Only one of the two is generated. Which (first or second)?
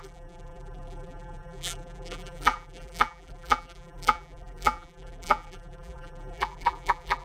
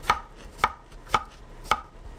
first